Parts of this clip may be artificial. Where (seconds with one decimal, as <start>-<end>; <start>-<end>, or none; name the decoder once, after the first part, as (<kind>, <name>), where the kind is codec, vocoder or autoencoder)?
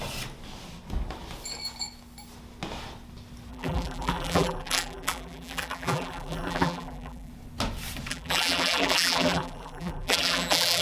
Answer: 3.5-7.3 (vocoder, BigVGAN v2); 8.1-10.8